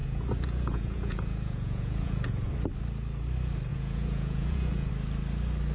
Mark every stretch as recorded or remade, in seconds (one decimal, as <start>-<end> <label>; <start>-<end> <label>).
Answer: 0.0-2.5 remade; 2.5-3.7 recorded; 3.7-4.9 remade; 4.9-5.7 recorded